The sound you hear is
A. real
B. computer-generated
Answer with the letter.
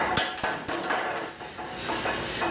A